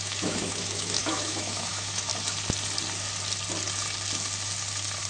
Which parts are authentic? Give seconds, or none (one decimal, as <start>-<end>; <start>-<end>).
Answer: 2.1-5.1